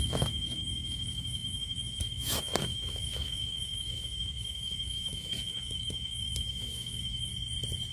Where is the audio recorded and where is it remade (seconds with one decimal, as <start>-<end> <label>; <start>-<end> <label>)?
0.0-7.3 remade; 7.3-7.9 recorded